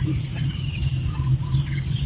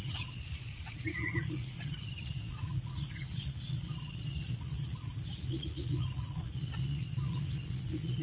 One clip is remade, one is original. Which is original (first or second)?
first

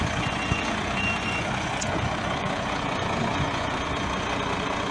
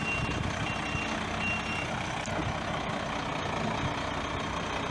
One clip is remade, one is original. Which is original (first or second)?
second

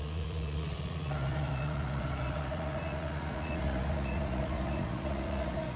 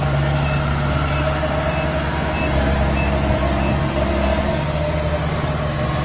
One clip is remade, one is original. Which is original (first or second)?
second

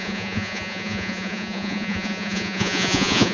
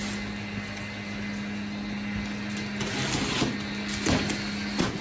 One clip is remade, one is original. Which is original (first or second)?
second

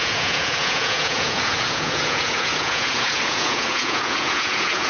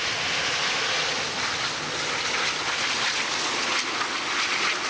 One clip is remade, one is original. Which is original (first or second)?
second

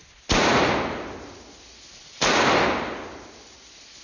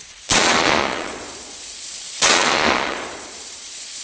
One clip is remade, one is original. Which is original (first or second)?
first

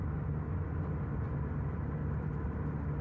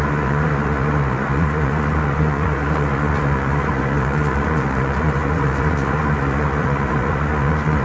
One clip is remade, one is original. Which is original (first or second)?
first